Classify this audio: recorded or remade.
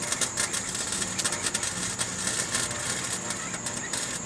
recorded